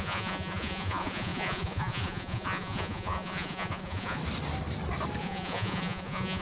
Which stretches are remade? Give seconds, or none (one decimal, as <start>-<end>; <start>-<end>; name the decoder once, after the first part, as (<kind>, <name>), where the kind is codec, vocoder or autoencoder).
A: 0.0-4.2 (vocoder, Vocos); 5.2-6.4